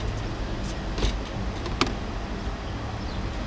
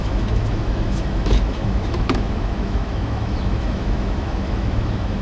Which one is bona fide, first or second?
first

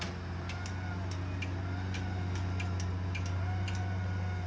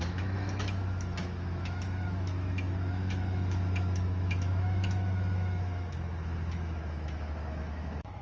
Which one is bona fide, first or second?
first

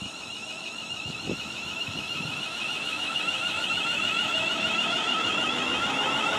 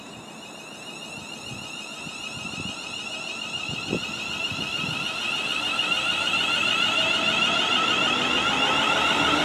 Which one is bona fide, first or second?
second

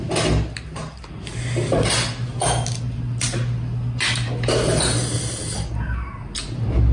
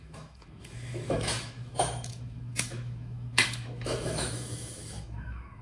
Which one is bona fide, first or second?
first